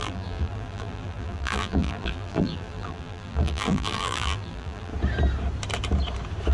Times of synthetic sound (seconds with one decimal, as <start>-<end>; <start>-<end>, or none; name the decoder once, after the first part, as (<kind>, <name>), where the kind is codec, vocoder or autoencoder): 0.0-4.9 (vocoder, BigVGAN v2)